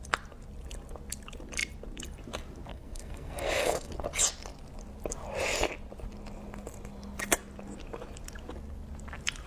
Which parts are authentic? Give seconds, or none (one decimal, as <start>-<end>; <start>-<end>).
0.0-2.7; 3.9-9.5

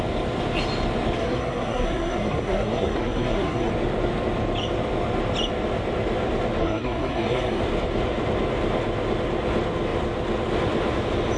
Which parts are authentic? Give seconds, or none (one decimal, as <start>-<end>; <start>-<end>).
0.0-1.2; 3.7-6.6; 7.6-11.4